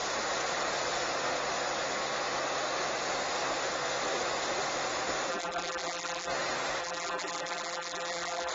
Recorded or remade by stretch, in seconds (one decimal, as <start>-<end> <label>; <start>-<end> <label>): 0.0-5.3 recorded; 5.3-6.3 remade; 6.3-6.8 recorded; 6.8-8.5 remade